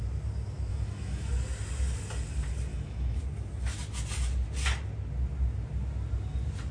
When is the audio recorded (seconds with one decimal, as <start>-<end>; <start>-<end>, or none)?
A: 0.0-0.7; 1.3-2.7; 3.2-6.7